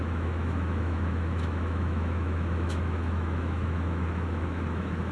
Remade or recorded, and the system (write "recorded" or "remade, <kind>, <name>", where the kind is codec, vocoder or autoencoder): remade, autoencoder, DAC-VAE